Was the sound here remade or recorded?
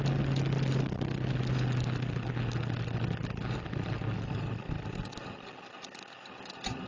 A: recorded